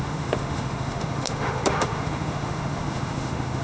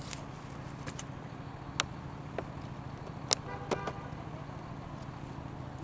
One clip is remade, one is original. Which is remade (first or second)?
first